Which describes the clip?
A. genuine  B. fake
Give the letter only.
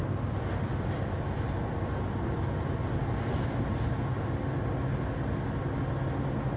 A